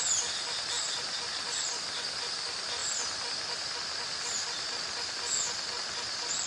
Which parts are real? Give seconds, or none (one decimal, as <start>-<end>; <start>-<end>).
0.0-6.5